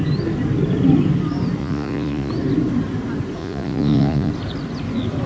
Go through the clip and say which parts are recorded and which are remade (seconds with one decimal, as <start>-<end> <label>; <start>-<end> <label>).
0.0-1.6 recorded; 1.6-2.3 remade; 2.3-3.4 recorded; 3.4-4.3 remade; 4.3-5.3 recorded